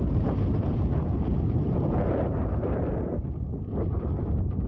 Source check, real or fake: fake